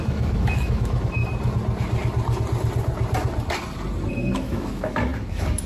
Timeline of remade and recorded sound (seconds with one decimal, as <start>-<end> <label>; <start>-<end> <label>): 0.0-1.2 remade; 1.2-4.1 recorded; 4.1-5.7 remade

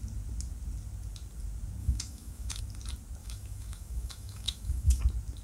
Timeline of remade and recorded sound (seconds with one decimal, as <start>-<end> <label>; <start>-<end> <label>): 0.0-1.8 recorded; 1.8-2.6 remade; 2.6-3.2 recorded; 3.2-5.0 remade; 5.0-5.4 recorded

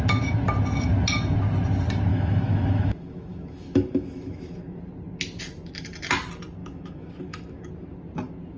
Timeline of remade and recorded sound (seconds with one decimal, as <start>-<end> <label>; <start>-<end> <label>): 0.0-2.1 recorded; 2.1-4.8 remade; 4.8-6.6 recorded; 6.6-7.7 remade; 7.7-8.6 recorded

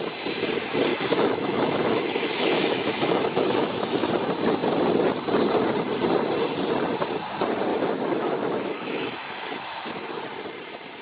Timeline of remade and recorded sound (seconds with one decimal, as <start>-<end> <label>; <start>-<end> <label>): 0.0-0.9 recorded; 0.9-4.1 remade; 4.1-7.7 recorded; 7.7-10.2 remade; 10.2-11.0 recorded

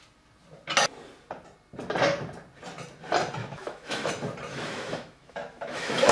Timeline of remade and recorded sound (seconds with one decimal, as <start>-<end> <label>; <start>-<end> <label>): 0.0-3.4 recorded; 3.4-4.1 remade; 4.1-4.5 recorded; 4.5-6.1 remade